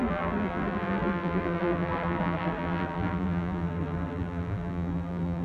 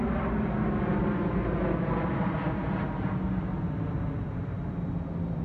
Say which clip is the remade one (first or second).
first